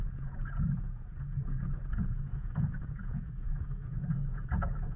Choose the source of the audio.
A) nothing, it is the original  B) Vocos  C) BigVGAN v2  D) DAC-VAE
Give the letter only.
B